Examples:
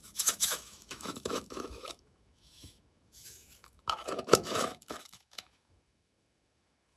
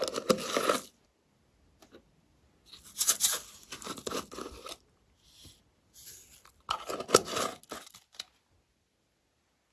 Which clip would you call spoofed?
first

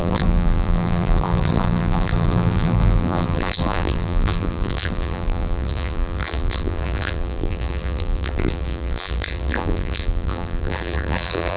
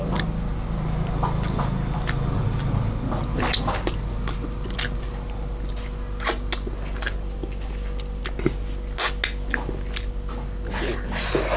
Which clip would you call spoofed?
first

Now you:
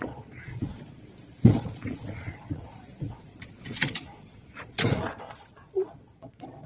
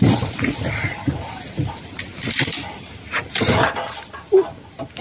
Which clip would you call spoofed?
first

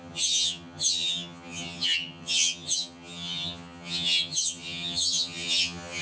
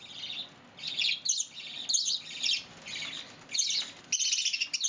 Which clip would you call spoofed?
first